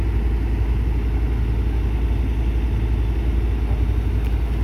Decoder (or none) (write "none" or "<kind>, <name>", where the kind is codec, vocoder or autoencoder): none